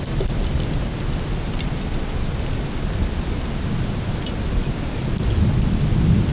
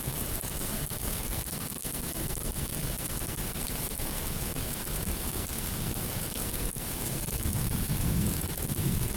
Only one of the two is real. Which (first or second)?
first